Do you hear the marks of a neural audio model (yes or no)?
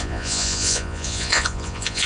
yes